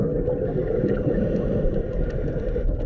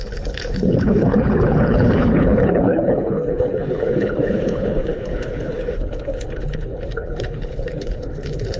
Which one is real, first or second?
first